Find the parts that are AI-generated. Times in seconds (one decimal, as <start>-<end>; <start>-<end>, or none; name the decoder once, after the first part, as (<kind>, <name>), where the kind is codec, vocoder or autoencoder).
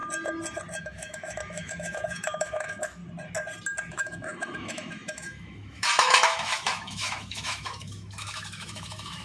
0.8-3.0 (autoencoder, DAC-VAE); 3.9-9.2